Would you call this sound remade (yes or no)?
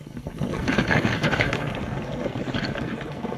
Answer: yes